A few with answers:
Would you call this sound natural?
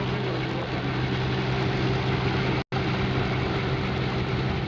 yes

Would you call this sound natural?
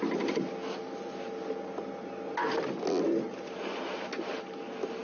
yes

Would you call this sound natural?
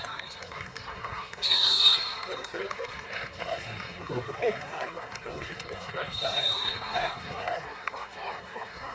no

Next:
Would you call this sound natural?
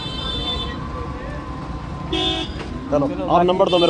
no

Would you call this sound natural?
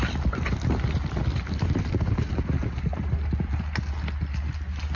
yes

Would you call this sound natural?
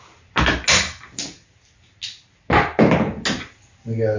yes